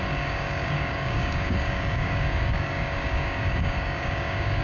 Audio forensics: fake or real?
fake